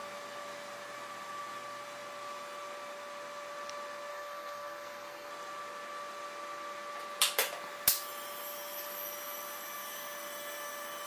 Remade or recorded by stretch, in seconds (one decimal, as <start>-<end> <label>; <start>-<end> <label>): 0.0-4.1 recorded; 4.1-5.3 remade; 5.3-11.1 recorded